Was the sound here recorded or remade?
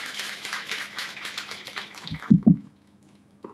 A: remade